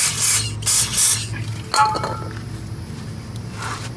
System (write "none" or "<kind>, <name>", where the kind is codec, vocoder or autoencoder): none